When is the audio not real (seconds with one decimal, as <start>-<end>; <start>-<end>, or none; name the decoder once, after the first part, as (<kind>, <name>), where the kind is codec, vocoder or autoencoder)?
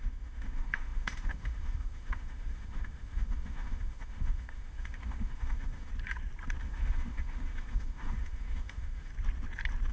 0.0-5.9 (autoencoder, DAC-VAE); 6.6-9.1